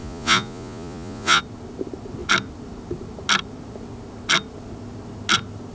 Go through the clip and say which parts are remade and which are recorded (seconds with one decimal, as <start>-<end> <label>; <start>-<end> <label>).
0.0-1.4 remade; 1.4-5.7 recorded